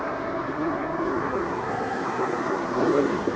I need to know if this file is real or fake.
fake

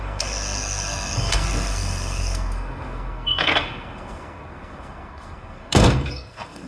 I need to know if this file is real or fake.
fake